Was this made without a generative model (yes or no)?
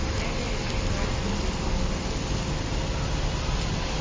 yes